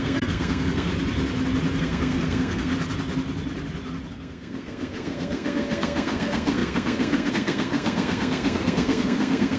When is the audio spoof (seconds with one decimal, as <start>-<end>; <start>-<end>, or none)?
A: 0.0-0.9; 1.8-2.7; 4.1-9.6